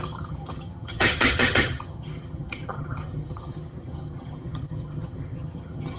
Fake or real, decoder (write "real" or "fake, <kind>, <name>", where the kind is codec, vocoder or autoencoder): fake, vocoder, HiFi-GAN